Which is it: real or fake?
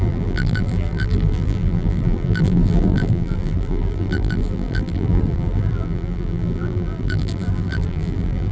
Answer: fake